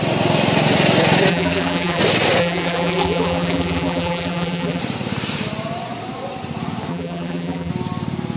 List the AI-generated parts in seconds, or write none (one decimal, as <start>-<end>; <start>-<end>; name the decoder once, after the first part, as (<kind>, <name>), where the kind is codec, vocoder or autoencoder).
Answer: 1.3-2.0 (vocoder, BigVGAN v2); 2.4-4.8; 6.9-7.7